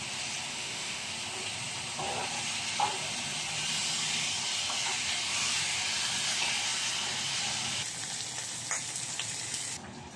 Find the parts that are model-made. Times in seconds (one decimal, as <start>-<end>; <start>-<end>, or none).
0.5-1.1